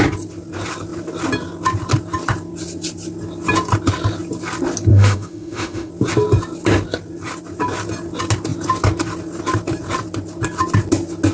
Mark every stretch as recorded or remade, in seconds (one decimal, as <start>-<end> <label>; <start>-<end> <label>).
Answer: 0.0-4.9 recorded; 4.9-5.9 remade; 5.9-11.3 recorded